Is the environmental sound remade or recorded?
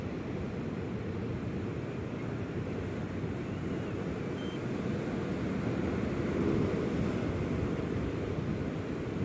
recorded